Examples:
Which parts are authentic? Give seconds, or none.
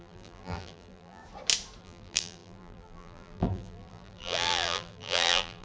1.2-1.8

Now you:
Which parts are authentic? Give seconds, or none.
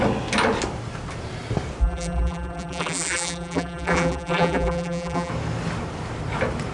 0.0-1.8; 5.3-6.7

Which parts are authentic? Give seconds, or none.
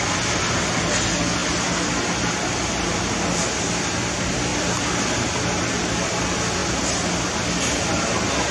0.0-8.5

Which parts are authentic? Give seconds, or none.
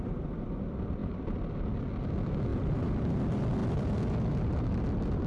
0.0-1.0; 1.8-2.5; 3.2-5.3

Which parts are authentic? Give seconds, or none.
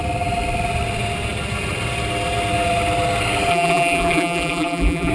0.0-3.5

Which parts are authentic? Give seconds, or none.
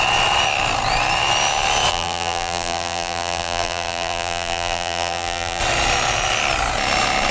0.0-1.9; 5.6-7.3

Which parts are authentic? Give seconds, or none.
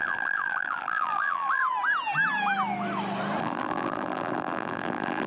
1.6-3.4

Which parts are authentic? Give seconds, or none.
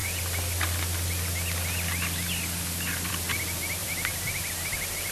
0.0-3.1